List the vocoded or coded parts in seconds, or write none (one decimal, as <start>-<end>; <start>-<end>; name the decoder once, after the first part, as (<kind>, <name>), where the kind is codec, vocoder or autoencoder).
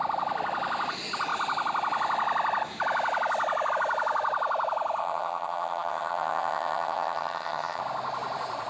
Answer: 5.0-7.8 (vocoder, HiFi-GAN)